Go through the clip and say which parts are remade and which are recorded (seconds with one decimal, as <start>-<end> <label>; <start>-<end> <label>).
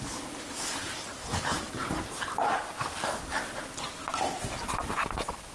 0.0-5.5 recorded